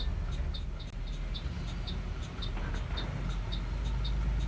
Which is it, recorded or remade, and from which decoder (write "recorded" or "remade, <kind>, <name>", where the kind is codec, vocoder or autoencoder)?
recorded